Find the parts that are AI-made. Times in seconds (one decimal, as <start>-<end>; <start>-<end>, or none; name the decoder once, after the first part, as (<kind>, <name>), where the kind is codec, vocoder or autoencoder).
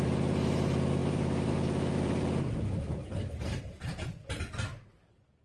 0.0-3.0 (vocoder, BigVGAN v2); 4.1-5.4